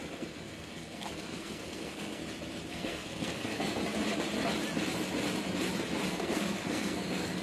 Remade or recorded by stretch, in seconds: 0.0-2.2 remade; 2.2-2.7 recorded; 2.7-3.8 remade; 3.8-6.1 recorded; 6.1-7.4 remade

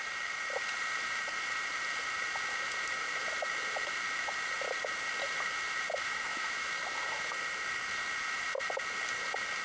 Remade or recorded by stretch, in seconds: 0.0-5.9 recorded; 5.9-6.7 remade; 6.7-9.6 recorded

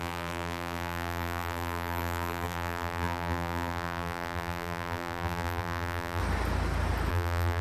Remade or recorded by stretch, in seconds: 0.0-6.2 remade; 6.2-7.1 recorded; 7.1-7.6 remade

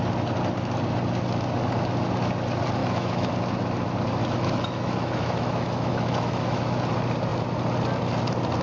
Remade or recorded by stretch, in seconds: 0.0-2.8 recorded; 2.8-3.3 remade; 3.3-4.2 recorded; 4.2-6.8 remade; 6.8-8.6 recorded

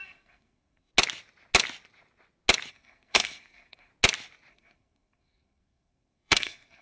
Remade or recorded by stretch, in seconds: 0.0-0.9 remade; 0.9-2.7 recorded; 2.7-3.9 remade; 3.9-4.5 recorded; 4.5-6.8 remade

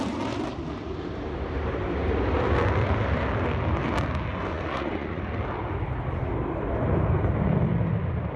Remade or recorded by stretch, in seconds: 0.0-4.5 recorded; 4.5-5.2 remade; 5.2-8.4 recorded